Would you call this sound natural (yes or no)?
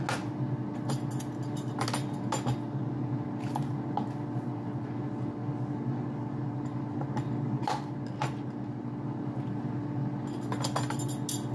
yes